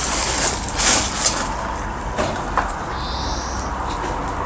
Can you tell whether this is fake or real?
real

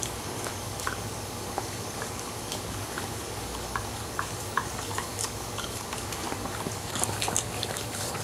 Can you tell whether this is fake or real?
fake